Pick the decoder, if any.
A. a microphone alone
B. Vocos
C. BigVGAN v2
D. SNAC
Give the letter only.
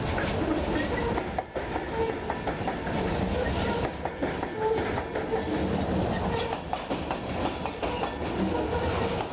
A